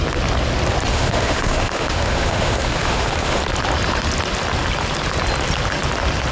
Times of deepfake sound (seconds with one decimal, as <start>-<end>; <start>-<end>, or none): 0.9-3.4